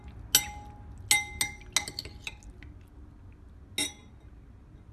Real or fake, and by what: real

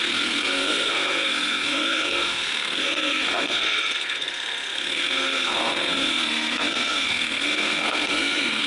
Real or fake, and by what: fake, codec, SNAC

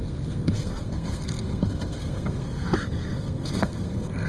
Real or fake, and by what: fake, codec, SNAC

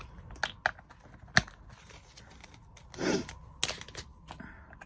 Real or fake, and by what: real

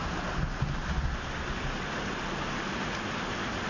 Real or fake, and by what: real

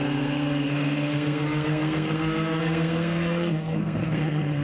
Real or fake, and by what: fake, codec, SNAC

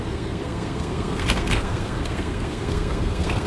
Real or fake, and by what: fake, codec, SNAC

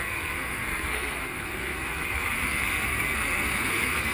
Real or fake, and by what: fake, codec, SNAC